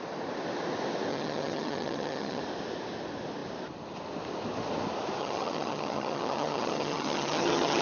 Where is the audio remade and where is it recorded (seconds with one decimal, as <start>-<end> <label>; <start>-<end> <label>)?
0.0-1.1 recorded; 1.1-2.4 remade; 2.4-5.2 recorded; 5.2-7.8 remade